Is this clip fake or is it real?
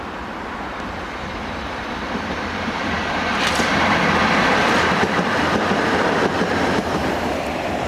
fake